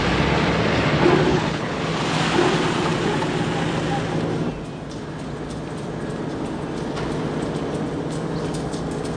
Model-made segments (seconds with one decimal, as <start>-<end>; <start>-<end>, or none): 1.3-1.8